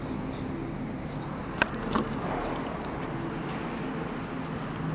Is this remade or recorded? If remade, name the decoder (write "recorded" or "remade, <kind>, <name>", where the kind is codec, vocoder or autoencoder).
recorded